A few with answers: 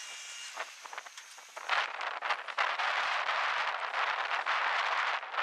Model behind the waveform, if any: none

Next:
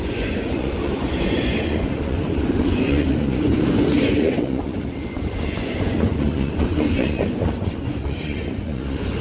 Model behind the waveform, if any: vocoder, Vocos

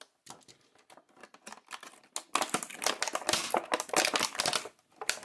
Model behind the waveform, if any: none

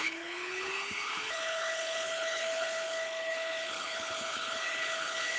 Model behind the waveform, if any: codec, HILCodec